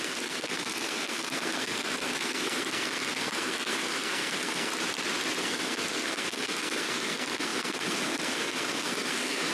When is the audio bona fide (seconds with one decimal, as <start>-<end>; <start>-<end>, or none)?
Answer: 4.7-5.4